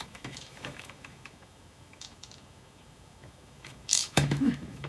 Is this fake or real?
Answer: fake